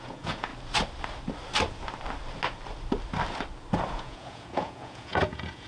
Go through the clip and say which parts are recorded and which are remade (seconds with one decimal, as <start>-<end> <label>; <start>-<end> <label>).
0.0-0.5 remade; 0.5-3.9 recorded; 3.9-5.7 remade